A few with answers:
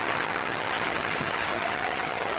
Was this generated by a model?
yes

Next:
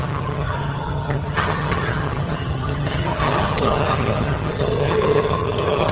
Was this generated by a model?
yes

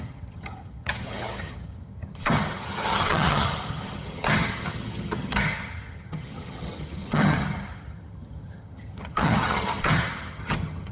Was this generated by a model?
yes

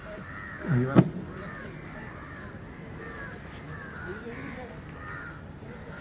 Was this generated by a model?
no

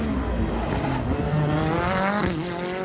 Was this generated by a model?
no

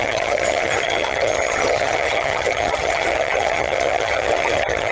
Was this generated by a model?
yes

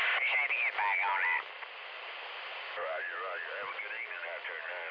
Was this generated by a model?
no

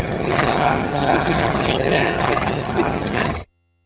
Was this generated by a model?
yes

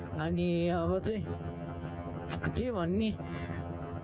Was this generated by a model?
yes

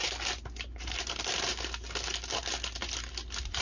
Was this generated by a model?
no